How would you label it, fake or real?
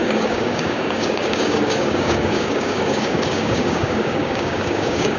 fake